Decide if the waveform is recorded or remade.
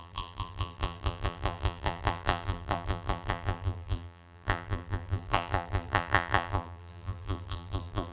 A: remade